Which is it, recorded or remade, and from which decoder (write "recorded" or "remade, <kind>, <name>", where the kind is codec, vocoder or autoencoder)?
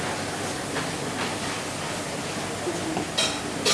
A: recorded